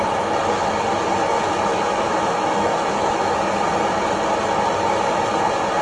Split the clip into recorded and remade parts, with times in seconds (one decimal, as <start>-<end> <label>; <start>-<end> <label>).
0.0-1.7 recorded; 1.7-3.6 remade; 3.6-5.8 recorded